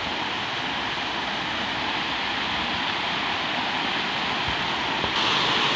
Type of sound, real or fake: real